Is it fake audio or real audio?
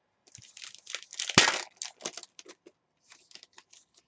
real